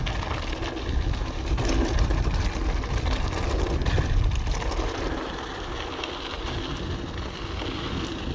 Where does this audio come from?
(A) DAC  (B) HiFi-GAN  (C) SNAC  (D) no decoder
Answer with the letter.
D